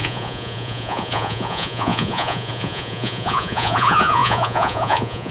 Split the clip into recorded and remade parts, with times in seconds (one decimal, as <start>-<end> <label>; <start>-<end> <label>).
0.0-5.3 remade